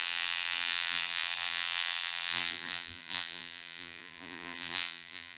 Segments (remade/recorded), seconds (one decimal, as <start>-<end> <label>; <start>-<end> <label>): 0.0-5.4 remade